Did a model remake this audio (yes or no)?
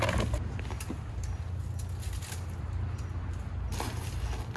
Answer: no